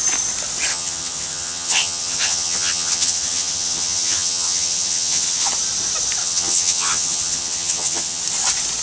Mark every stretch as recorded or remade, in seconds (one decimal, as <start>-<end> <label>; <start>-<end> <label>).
0.0-0.7 recorded; 0.7-5.5 remade; 5.5-6.2 recorded; 6.2-8.2 remade; 8.2-8.8 recorded